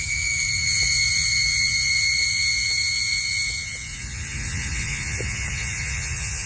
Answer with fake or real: fake